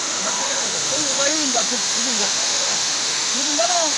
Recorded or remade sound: remade